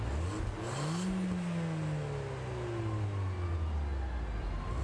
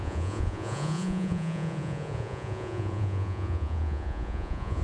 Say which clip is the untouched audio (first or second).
first